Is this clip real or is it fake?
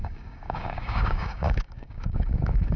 fake